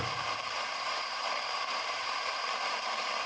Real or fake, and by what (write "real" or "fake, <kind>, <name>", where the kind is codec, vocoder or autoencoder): fake, vocoder, BigVGAN v2